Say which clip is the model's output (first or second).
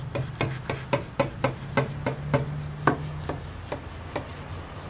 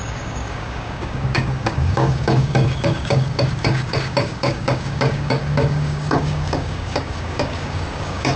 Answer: second